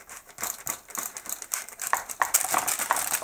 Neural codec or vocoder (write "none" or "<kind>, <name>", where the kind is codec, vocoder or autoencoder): none